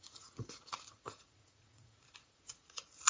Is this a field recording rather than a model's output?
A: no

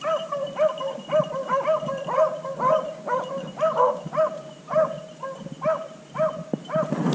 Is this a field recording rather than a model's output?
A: yes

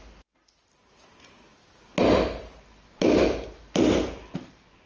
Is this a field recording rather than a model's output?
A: yes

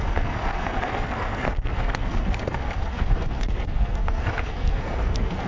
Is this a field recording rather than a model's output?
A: no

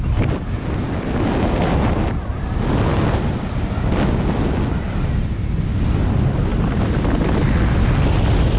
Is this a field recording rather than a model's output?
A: yes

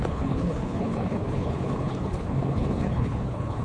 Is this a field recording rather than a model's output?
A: no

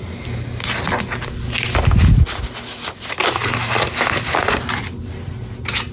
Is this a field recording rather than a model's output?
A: yes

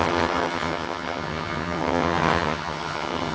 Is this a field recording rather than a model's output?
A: no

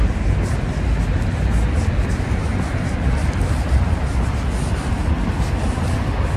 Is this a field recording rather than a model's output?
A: yes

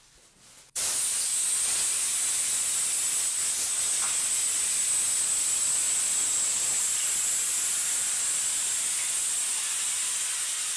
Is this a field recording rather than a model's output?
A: yes